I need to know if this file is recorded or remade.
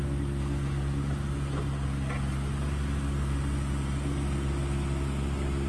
recorded